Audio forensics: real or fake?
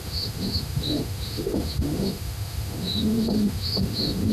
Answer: fake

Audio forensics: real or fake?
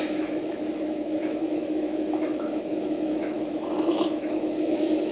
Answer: fake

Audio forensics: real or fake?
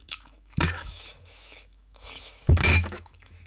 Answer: fake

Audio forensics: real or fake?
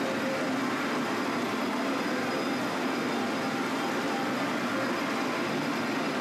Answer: real